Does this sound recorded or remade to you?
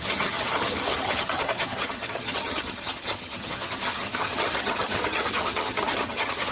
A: remade